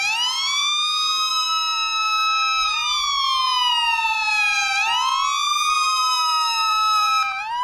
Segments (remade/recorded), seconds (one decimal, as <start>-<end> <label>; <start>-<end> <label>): 0.0-0.6 remade; 0.6-1.3 recorded; 1.3-2.8 remade; 2.8-3.7 recorded; 3.7-5.1 remade; 5.1-5.7 recorded; 5.7-7.6 remade